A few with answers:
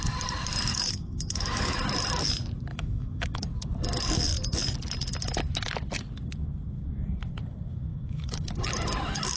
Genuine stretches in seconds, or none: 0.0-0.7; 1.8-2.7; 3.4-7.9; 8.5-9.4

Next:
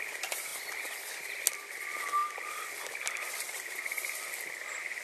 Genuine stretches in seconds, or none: 0.0-5.0

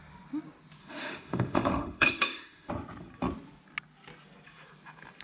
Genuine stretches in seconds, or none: 0.0-0.8; 2.7-5.2